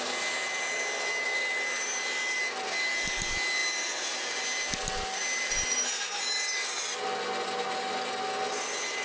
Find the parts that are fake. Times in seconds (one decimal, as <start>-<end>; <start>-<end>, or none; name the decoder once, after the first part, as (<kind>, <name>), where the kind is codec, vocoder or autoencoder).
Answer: none